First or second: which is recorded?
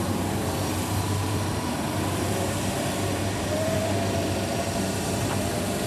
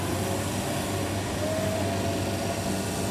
second